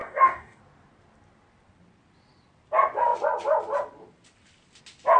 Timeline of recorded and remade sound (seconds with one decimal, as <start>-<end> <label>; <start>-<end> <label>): 0.0-0.6 remade; 0.6-5.2 recorded